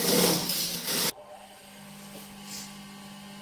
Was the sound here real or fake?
real